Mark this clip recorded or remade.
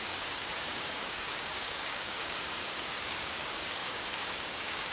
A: remade